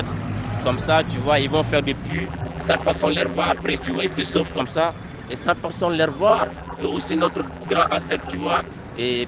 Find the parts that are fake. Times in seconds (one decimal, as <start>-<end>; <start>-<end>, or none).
2.1-4.6; 6.3-8.7